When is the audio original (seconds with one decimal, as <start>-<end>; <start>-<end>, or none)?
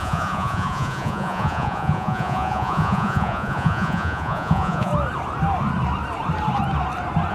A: 4.9-7.3